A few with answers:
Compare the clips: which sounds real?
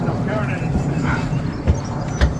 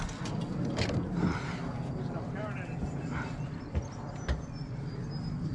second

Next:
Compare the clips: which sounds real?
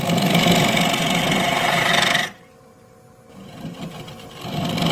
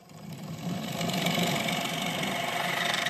first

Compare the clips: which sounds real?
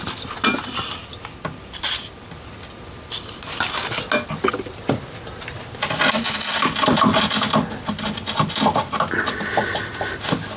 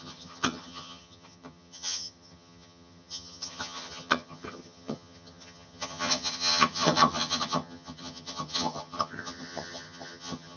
first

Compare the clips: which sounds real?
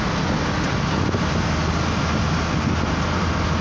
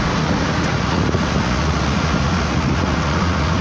first